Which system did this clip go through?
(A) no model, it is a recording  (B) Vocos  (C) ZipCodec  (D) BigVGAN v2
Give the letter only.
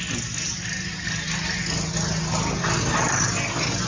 A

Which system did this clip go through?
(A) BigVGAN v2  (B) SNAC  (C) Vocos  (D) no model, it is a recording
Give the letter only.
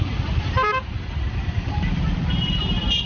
A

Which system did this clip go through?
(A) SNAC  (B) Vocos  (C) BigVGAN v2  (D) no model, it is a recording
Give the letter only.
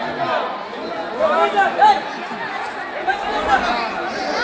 D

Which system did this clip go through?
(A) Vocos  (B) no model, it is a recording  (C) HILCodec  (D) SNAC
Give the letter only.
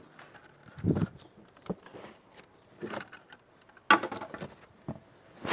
B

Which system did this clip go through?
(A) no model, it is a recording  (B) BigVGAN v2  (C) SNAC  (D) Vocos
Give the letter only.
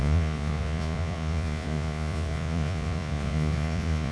D